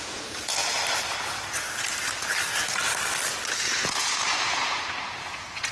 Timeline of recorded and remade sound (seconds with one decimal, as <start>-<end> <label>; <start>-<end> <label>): 0.0-0.6 remade; 0.6-3.6 recorded; 3.6-5.7 remade